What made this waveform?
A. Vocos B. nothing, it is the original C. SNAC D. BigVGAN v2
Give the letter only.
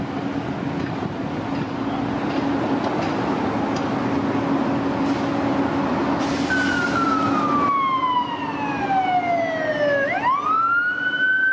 B